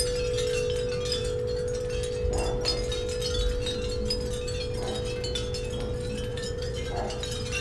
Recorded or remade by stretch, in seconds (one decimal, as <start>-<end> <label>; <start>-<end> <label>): 0.0-6.3 recorded; 6.3-7.0 remade; 7.0-7.6 recorded